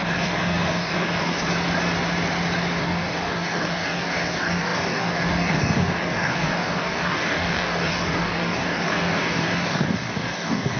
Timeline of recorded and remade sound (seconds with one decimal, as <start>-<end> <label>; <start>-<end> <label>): 0.0-1.5 remade; 1.5-2.8 recorded; 2.8-10.8 remade